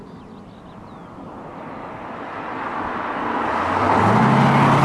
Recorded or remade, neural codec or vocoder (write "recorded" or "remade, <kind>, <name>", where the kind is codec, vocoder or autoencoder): recorded